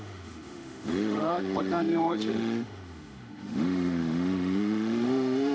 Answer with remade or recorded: remade